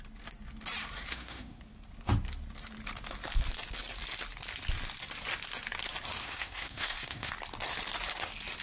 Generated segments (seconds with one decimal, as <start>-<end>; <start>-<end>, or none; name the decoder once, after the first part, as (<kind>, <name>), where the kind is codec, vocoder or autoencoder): 1.1-1.6 (codec, SNAC); 6.2-7.3